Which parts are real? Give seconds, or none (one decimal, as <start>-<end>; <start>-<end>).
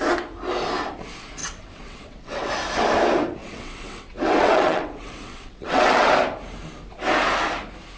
0.0-1.4; 2.5-3.4; 6.1-8.0